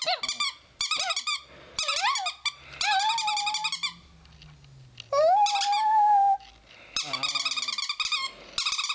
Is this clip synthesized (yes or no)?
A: no